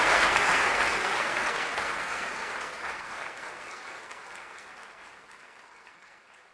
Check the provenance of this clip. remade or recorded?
remade